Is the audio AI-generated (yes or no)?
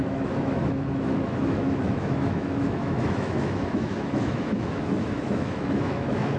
yes